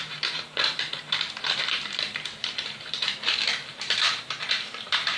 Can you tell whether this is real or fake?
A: fake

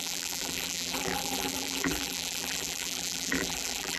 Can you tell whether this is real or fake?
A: fake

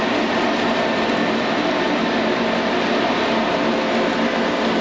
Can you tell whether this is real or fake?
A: real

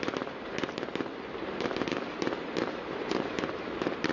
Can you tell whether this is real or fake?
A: fake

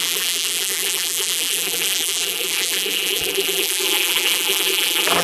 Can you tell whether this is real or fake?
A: fake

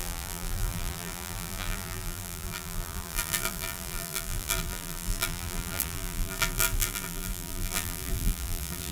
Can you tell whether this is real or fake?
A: fake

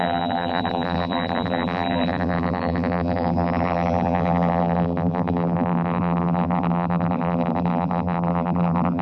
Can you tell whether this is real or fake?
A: fake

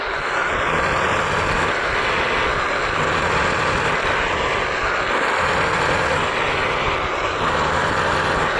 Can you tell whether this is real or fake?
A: real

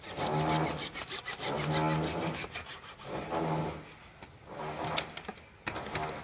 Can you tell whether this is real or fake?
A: real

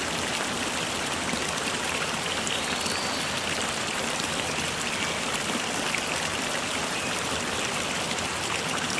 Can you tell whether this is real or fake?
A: fake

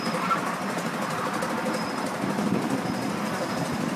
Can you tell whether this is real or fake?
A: real